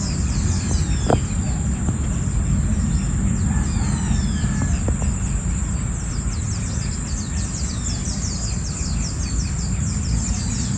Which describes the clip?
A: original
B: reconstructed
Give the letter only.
A